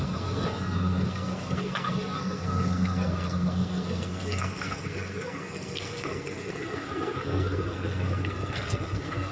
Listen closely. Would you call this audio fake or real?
fake